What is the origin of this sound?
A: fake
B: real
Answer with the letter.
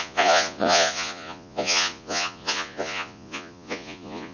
A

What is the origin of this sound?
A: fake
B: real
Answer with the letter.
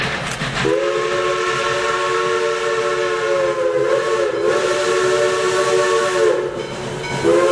B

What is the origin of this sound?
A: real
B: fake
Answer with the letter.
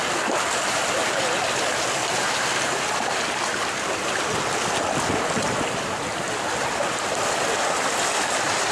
A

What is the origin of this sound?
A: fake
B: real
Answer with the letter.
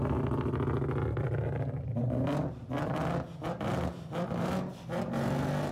B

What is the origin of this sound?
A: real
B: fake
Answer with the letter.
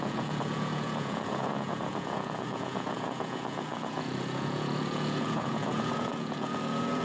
B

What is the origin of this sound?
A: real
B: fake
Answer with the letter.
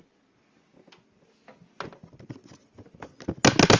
A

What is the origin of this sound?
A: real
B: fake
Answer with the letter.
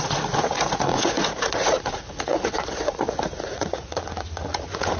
B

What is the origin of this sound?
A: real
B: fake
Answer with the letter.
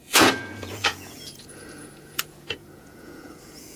B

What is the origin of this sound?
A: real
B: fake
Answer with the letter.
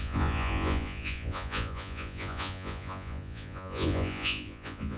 B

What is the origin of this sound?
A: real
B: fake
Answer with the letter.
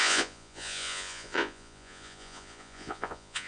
B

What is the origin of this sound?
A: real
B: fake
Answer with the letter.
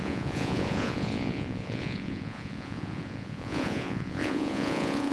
B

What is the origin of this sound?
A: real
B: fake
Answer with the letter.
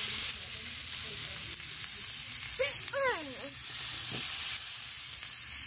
A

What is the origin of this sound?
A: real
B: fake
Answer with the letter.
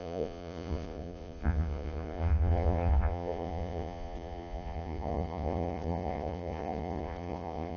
B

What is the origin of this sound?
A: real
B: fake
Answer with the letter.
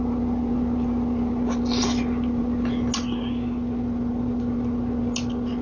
A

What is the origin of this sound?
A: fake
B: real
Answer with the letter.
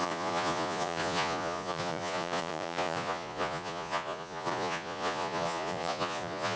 A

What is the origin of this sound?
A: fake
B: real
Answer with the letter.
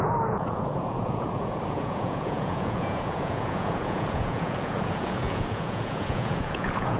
A